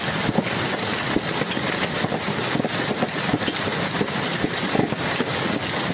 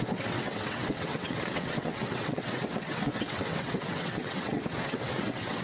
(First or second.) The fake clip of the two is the second